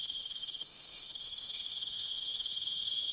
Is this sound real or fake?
fake